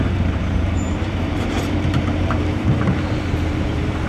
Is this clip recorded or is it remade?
remade